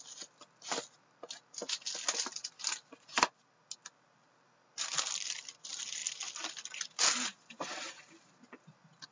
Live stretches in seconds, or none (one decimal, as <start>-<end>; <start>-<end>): 0.0-9.1